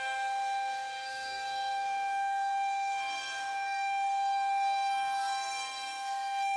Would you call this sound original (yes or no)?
no